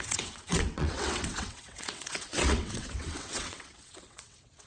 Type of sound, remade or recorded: remade